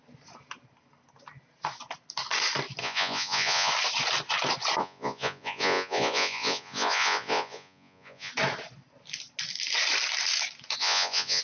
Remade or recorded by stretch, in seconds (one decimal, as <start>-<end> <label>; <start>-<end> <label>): 0.0-2.8 recorded; 2.8-3.7 remade; 3.7-4.8 recorded; 4.8-8.3 remade; 8.3-10.8 recorded; 10.8-11.4 remade

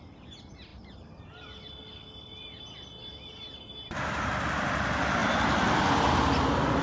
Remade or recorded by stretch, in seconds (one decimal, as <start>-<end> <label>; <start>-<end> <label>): 0.0-6.8 recorded

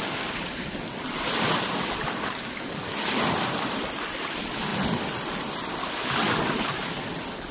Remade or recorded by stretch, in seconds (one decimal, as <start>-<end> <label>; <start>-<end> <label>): 0.0-7.5 remade

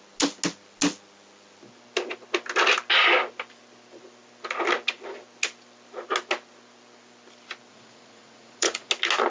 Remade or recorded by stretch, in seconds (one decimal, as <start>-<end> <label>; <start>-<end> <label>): 0.0-7.7 recorded; 7.7-8.9 remade; 8.9-9.3 recorded

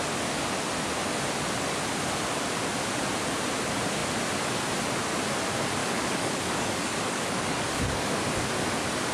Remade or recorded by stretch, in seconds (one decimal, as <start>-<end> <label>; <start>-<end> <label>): 0.0-5.8 recorded; 5.8-8.2 remade; 8.2-9.1 recorded

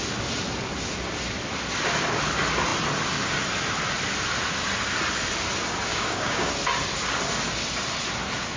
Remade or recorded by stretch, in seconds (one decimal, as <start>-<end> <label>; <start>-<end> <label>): 0.0-5.9 recorded; 5.9-6.5 remade; 6.5-8.6 recorded

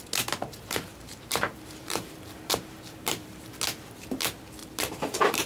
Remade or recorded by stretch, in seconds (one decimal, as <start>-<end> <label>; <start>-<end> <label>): 0.0-0.9 recorded; 0.9-3.6 remade; 3.6-4.6 recorded; 4.6-5.5 remade

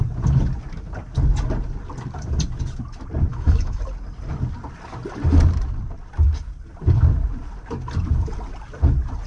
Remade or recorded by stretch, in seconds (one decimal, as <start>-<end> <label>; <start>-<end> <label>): 0.0-3.3 recorded; 3.3-3.8 remade; 3.8-9.3 recorded